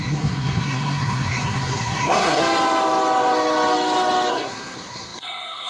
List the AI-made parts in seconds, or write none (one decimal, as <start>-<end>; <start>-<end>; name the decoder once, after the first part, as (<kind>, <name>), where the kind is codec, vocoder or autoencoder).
0.0-2.4 (codec, SNAC); 4.3-5.7